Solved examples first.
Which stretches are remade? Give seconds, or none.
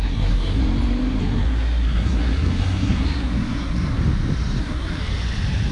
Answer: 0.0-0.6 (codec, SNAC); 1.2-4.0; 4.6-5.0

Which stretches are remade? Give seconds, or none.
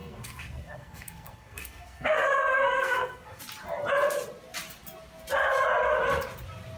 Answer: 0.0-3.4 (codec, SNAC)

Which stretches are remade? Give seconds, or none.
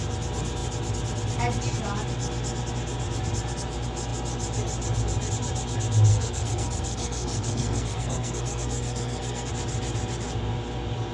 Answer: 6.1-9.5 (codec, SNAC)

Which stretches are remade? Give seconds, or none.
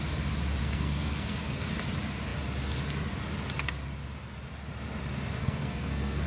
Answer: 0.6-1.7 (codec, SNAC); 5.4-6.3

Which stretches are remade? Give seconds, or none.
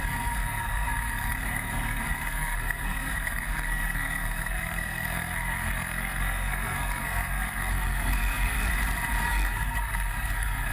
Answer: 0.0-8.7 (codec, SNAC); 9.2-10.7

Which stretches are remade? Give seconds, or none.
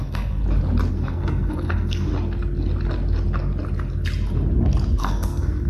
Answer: 0.0-0.4 (codec, SNAC); 0.9-2.1; 5.0-5.7